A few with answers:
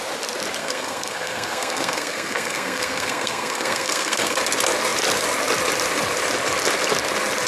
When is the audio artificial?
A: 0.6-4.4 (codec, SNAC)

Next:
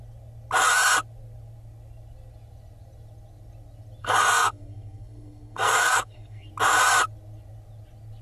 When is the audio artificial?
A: 4.0-6.5 (codec, SNAC)

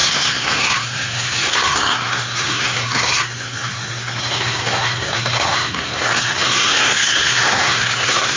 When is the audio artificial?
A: 0.0-8.4 (codec, SNAC)